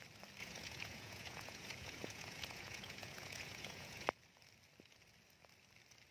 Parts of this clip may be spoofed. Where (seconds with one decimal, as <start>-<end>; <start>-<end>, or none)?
0.4-4.1